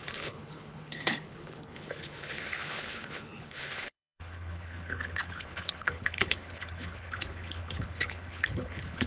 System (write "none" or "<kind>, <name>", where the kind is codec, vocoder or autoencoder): codec, HILCodec